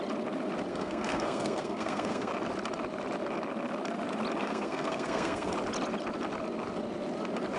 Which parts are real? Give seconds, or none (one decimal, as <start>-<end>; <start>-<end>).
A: 0.0-0.7; 2.3-4.4; 5.5-7.6